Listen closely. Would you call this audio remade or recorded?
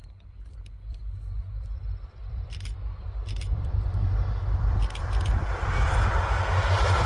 remade